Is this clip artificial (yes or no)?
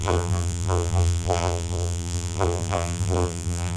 yes